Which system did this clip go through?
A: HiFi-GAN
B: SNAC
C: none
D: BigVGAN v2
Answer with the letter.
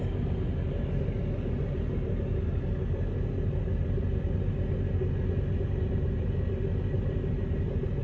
C